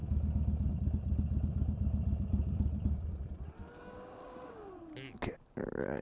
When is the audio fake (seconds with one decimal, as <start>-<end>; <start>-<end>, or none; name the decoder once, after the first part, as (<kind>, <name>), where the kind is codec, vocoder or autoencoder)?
3.8-4.7 (codec, DAC)